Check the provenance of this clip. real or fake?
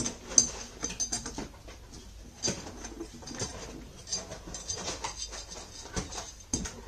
real